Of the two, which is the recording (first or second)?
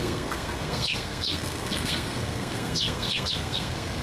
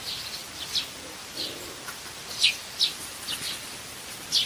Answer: second